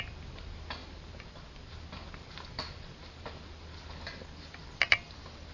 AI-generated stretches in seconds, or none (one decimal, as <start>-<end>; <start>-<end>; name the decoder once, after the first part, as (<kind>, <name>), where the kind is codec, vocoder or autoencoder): none